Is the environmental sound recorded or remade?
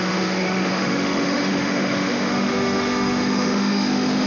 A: remade